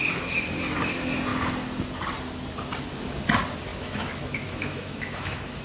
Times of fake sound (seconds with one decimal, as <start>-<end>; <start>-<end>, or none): 3.7-5.6